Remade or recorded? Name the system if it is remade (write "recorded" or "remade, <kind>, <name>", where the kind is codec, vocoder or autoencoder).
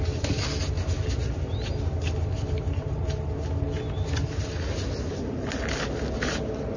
recorded